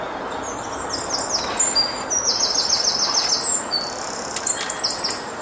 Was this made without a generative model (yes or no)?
yes